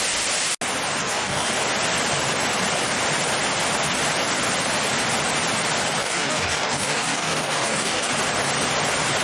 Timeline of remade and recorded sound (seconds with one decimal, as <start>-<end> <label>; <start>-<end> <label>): 0.0-1.0 recorded; 1.0-1.5 remade; 1.5-6.0 recorded; 6.0-8.1 remade; 8.1-9.2 recorded